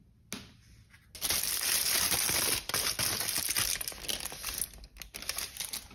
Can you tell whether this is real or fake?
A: real